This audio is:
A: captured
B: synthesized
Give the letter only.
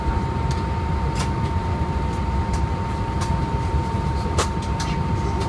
A